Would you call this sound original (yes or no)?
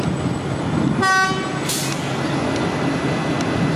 yes